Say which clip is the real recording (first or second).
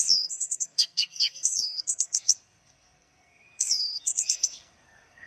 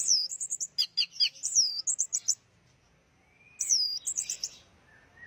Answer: second